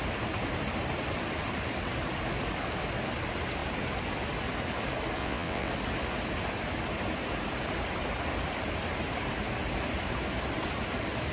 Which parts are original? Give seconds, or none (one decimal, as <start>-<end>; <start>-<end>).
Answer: 0.0-5.2; 5.7-11.3